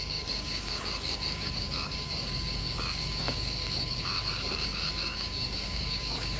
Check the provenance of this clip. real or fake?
fake